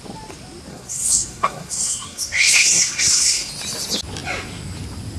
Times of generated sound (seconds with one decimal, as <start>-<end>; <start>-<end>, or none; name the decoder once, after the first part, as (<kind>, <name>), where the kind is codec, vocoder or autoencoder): 0.7-3.5 (codec, SNAC)